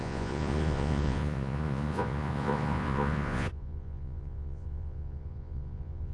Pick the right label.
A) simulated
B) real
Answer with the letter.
A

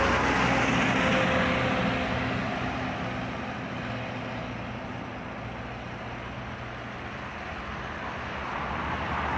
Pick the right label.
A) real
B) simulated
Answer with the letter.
A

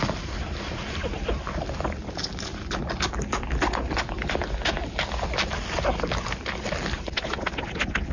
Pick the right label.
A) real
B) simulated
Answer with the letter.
A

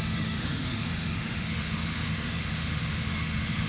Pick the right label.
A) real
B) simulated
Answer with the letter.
B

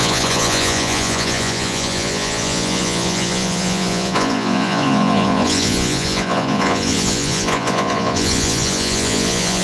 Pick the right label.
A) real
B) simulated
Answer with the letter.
B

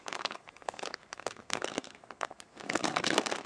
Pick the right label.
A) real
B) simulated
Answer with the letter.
B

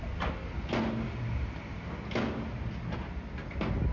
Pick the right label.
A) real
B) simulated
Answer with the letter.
A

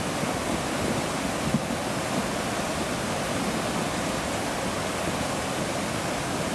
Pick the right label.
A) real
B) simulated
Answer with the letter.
A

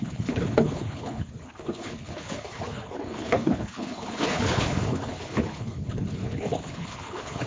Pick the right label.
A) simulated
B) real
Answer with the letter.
A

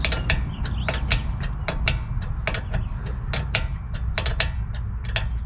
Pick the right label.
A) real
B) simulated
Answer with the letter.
A